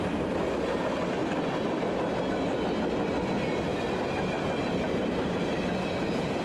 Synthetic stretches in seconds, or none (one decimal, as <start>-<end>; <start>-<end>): none